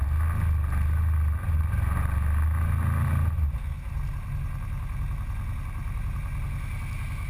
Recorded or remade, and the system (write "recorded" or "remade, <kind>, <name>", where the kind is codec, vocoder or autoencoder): recorded